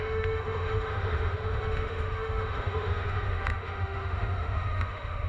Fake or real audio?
fake